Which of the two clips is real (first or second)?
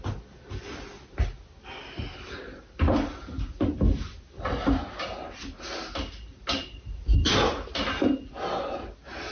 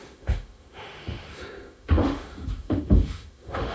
first